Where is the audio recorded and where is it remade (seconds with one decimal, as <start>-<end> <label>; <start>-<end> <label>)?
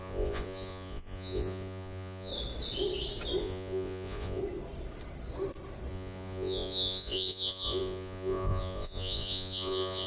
0.0-2.3 remade; 2.3-3.4 recorded; 3.4-4.4 remade; 4.4-5.9 recorded; 5.9-10.1 remade